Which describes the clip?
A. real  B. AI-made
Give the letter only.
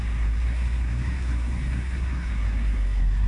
B